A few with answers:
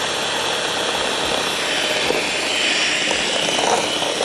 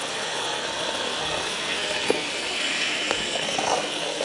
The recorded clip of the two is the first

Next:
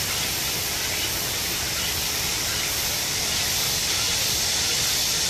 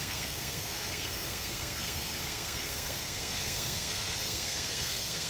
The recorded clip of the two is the first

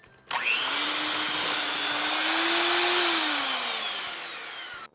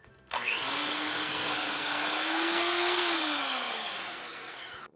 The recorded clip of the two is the first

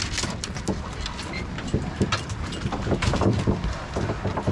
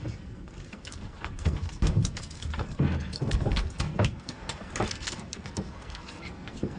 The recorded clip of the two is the first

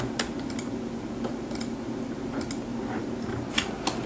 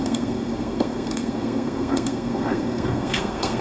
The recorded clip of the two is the first